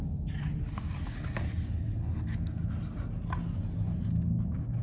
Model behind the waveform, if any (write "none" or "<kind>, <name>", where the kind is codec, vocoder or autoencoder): none